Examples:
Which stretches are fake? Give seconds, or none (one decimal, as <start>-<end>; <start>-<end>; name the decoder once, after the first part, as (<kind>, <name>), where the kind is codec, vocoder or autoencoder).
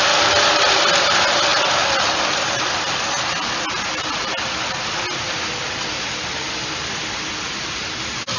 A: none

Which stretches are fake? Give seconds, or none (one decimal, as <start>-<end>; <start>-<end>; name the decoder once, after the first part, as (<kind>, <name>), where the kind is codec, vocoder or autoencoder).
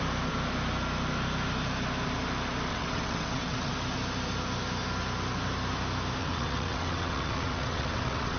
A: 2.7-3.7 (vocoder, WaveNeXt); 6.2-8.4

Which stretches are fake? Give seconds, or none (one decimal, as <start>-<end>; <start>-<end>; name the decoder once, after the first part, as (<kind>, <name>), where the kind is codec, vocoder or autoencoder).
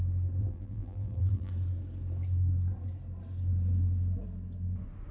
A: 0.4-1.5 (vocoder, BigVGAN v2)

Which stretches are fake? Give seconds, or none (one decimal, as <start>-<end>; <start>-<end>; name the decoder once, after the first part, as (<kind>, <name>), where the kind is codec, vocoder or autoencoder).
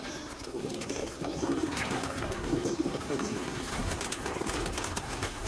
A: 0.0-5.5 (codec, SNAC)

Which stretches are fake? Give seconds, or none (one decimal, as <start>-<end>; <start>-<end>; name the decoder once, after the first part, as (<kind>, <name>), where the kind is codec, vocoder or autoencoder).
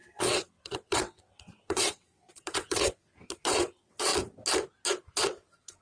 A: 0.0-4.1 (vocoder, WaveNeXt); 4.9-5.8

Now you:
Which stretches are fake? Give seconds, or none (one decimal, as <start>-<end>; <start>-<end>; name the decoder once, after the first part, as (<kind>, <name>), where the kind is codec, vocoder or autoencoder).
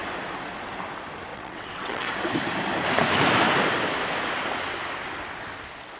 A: 1.3-2.1 (vocoder, WaveNeXt)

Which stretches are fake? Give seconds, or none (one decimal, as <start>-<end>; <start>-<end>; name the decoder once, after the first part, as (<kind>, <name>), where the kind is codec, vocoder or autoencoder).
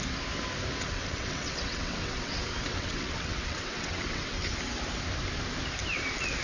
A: 0.7-4.5 (vocoder, WaveNeXt)